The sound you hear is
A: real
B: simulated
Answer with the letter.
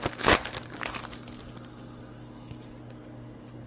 A